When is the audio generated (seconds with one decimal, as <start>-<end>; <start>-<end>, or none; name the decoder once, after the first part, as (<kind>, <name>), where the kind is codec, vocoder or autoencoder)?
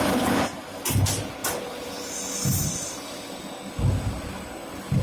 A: none